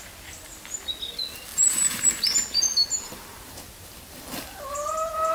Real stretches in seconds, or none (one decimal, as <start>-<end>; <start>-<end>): 0.0-5.3